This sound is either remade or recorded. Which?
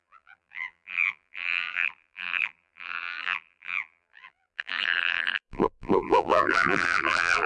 remade